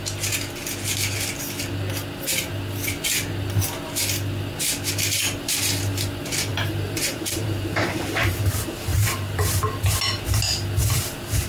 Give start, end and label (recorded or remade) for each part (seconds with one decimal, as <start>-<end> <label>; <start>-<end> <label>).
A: 0.0-6.5 recorded; 6.5-8.3 remade; 8.3-8.9 recorded; 8.9-9.5 remade; 9.5-11.5 recorded